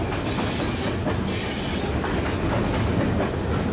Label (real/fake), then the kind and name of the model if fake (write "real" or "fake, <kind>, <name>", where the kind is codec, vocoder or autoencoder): real